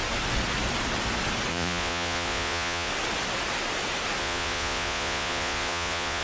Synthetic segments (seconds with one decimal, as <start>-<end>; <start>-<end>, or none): 1.5-2.9; 4.2-6.2